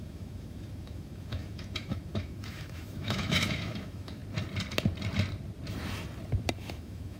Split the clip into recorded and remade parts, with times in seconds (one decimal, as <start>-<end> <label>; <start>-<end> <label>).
0.0-4.2 remade; 4.2-6.6 recorded; 6.6-7.2 remade